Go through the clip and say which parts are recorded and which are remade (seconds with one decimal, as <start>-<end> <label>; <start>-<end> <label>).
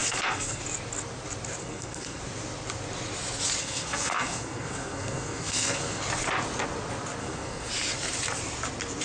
0.0-0.6 remade; 0.6-1.6 recorded; 1.6-2.2 remade; 2.2-3.6 recorded; 3.6-6.0 remade; 6.0-7.2 recorded; 7.2-7.7 remade; 7.7-9.0 recorded